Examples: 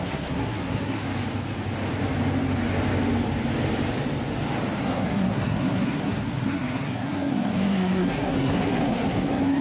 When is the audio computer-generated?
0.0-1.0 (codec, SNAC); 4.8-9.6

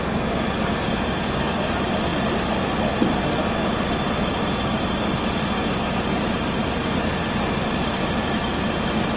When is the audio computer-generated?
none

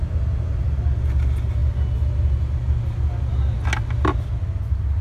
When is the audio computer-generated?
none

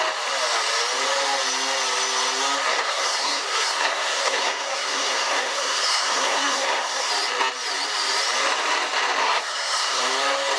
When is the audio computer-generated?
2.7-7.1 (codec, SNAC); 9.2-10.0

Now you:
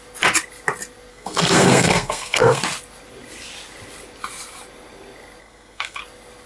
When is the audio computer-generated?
1.1-2.6 (codec, SNAC); 5.4-6.0

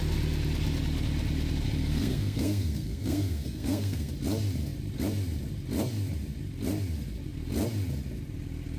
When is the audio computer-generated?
1.8-4.1 (codec, SNAC)